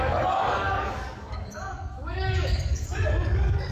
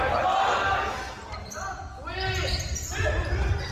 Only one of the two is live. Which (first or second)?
second